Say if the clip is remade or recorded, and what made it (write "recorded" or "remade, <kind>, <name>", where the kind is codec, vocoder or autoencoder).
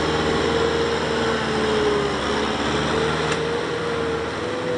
recorded